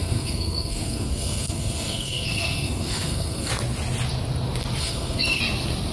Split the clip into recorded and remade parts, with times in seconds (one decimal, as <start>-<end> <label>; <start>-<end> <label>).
0.0-3.5 remade; 3.5-4.8 recorded; 4.8-5.4 remade; 5.4-5.9 recorded